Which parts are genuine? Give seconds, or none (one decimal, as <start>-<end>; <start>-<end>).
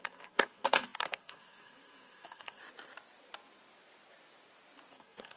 2.6-4.9